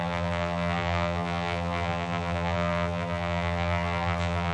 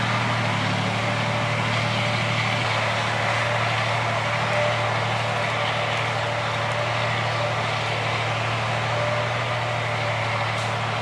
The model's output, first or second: first